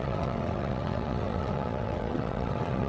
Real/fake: fake